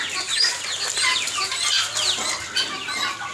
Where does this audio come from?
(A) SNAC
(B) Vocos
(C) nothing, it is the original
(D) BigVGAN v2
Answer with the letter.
C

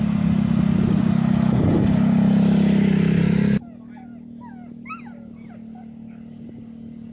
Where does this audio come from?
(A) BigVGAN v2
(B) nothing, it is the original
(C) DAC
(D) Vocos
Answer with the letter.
B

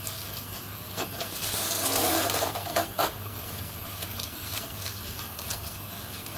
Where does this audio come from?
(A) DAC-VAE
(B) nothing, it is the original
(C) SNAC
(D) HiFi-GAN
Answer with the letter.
C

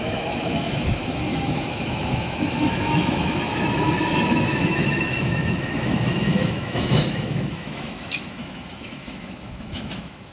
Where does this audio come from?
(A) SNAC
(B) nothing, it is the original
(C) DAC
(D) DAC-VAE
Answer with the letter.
D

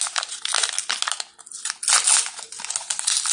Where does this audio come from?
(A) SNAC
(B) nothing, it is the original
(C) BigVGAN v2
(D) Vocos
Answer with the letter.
B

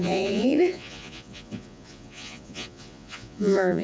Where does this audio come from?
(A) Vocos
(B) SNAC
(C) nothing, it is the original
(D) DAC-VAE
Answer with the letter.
A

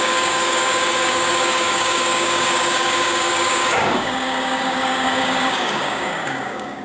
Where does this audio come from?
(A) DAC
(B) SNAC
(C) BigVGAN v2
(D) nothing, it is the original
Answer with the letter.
A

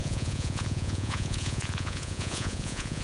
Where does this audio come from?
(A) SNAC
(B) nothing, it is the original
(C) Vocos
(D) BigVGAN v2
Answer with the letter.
C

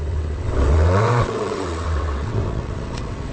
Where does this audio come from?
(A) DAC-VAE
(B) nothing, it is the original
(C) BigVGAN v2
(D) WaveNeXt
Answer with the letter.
D